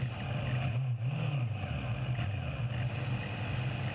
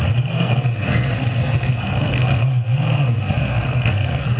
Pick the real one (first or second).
first